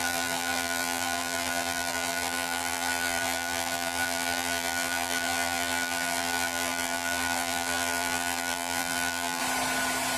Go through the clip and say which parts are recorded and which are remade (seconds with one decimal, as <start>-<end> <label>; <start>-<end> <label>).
0.0-9.4 remade; 9.4-10.2 recorded